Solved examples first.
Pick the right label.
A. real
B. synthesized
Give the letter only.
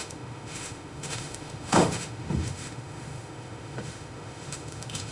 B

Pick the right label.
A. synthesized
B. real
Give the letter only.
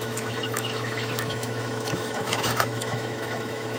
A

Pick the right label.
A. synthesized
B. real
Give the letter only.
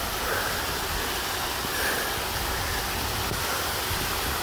B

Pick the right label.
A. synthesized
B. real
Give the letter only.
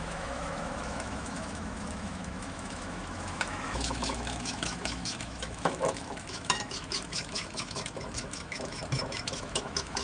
A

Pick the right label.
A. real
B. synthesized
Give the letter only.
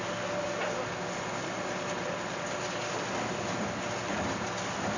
A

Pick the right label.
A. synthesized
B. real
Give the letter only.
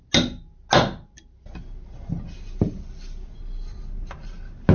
B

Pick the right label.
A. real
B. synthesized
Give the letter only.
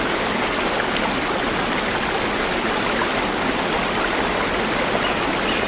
A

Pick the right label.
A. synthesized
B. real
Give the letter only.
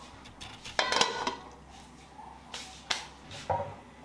B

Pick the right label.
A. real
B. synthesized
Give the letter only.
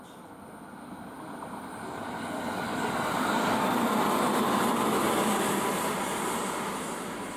A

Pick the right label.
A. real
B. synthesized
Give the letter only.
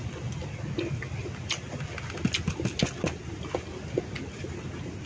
A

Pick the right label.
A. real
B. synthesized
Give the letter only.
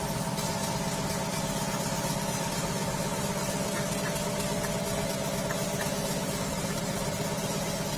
A